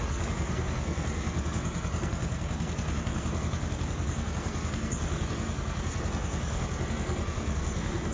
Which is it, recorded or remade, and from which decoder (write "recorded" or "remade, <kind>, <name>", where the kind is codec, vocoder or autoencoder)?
remade, codec, SNAC